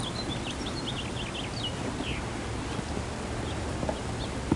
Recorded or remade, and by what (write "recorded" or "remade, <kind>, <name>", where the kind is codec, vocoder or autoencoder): recorded